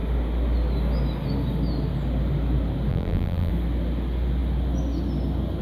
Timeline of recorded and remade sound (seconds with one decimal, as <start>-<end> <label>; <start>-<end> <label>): 0.0-2.9 recorded; 2.9-3.5 remade; 3.5-5.6 recorded